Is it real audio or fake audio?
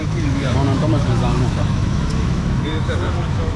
fake